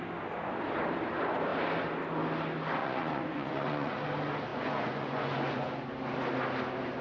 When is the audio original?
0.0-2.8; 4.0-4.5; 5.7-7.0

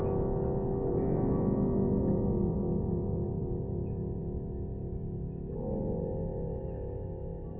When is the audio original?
0.0-7.6

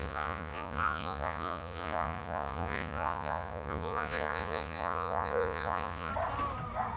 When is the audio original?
6.1-7.0

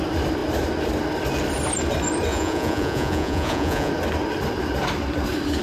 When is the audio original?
0.0-2.3; 3.9-5.6

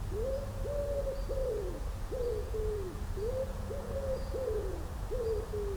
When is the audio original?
0.0-1.4; 4.9-5.8

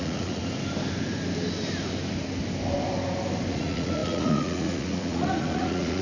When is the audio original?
0.4-3.5

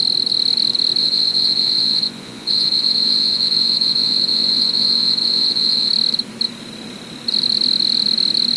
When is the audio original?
0.0-1.0; 5.9-8.6